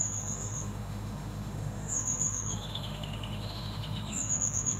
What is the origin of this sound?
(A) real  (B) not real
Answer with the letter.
B